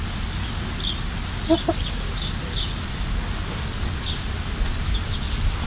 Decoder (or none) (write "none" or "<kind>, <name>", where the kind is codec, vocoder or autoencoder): none